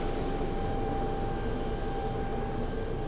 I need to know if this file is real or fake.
real